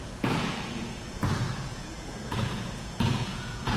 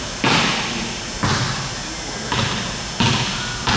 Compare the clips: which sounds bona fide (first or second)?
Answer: second